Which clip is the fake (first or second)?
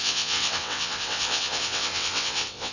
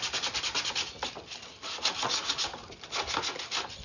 first